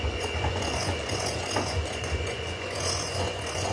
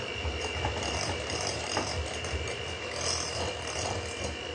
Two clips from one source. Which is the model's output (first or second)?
first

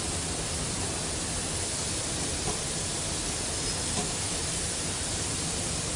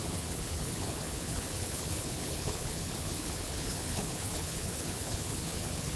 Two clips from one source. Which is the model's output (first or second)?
second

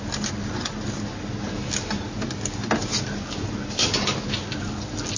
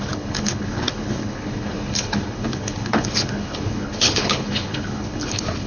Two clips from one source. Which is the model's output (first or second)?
second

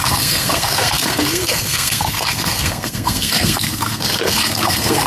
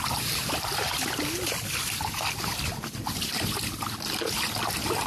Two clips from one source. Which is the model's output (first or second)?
first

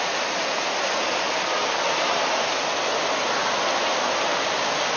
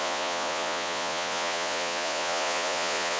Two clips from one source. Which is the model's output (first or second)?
second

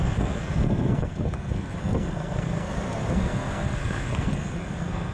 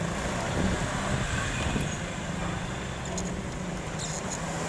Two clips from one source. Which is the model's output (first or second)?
first